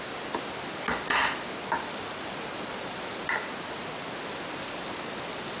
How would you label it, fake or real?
real